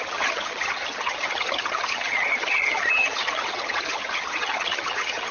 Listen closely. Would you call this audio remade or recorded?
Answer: remade